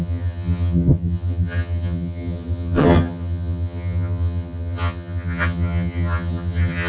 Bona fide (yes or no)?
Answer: no